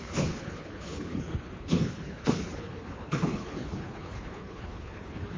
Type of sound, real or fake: fake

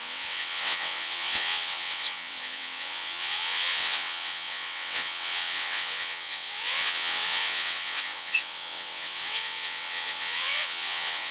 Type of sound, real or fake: fake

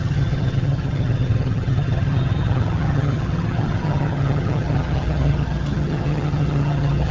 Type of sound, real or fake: fake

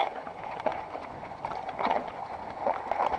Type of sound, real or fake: fake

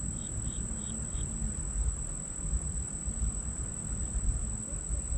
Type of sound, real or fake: fake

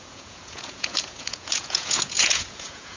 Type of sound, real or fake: fake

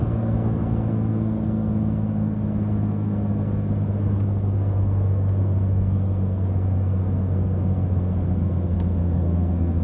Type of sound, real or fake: fake